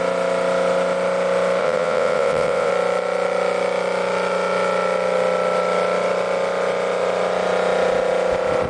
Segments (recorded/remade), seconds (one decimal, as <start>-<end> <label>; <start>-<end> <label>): 0.0-1.6 recorded; 1.6-2.7 remade; 2.7-8.7 recorded